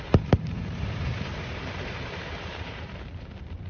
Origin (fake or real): fake